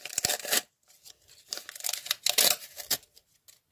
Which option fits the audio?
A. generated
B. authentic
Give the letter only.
B